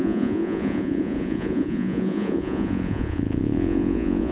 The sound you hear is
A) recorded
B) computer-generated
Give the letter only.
B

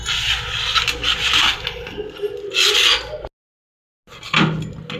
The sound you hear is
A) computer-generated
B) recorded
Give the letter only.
B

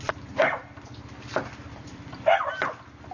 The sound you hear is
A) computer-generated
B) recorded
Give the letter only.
B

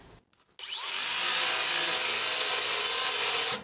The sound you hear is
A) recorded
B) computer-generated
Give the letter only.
A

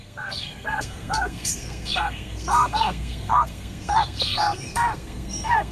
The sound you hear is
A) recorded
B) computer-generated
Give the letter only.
B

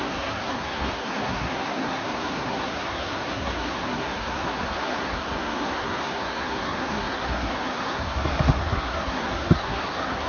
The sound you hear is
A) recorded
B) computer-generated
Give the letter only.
B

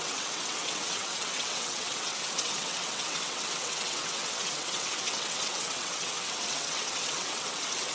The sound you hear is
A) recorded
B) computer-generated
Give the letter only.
B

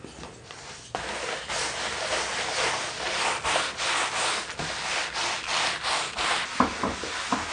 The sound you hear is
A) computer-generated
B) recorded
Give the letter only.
B